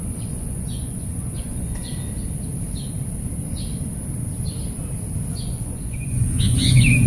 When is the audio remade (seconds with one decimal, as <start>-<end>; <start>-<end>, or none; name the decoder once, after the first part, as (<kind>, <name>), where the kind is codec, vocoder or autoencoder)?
0.0-1.9 (vocoder, Vocos); 5.3-7.1